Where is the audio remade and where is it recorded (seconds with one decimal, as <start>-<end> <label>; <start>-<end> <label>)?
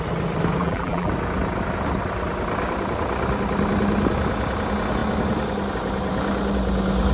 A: 0.0-0.6 recorded; 0.6-1.1 remade; 1.1-7.1 recorded